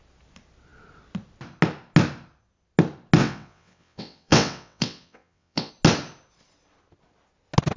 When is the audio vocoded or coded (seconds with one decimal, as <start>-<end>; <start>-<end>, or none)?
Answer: 3.2-5.7